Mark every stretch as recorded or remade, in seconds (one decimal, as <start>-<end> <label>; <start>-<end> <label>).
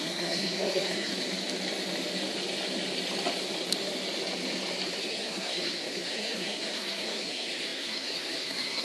0.0-1.1 remade; 1.1-5.0 recorded; 5.0-8.8 remade